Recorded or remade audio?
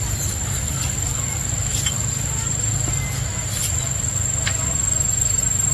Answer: recorded